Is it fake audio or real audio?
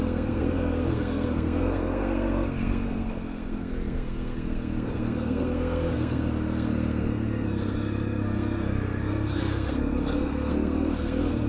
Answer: fake